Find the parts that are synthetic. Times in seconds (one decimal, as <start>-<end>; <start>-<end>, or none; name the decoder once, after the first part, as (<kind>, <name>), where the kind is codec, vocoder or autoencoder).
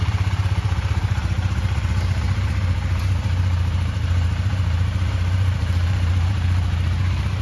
0.0-7.4 (vocoder, BigVGAN v2)